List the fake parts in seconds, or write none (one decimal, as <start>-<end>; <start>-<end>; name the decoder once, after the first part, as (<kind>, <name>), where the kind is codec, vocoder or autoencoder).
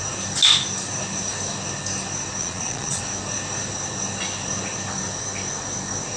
2.4-3.0 (vocoder, Vocos)